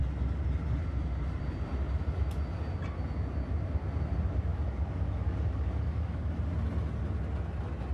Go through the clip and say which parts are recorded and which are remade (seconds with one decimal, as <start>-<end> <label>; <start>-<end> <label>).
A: 0.0-4.5 recorded; 4.5-6.4 remade; 6.4-7.9 recorded